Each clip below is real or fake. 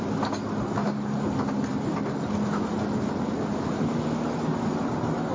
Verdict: real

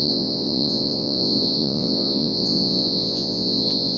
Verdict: fake